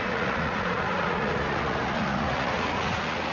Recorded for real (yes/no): no